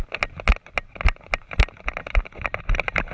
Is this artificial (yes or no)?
no